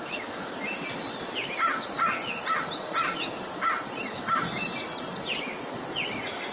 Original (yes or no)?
yes